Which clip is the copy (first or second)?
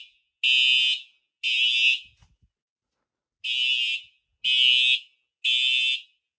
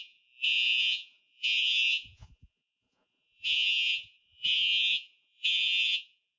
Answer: second